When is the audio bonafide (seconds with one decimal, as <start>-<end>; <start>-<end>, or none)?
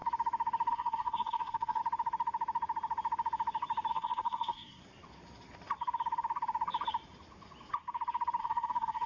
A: 0.0-0.7; 1.8-3.9; 4.8-8.4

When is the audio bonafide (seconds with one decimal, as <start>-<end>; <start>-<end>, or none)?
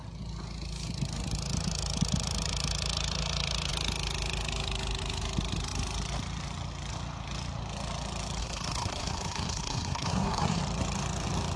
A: 0.0-8.4; 10.6-11.6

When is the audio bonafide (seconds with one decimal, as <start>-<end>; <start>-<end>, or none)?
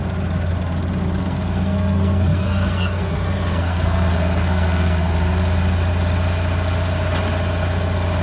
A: 0.0-1.2; 3.1-3.5; 5.1-8.2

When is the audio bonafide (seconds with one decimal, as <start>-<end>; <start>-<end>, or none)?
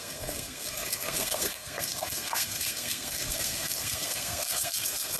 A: none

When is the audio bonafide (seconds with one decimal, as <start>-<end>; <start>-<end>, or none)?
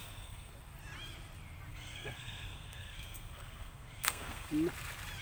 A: 0.5-1.7; 4.5-5.2